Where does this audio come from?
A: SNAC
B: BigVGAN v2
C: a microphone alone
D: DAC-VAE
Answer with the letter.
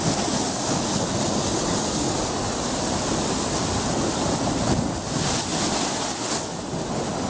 C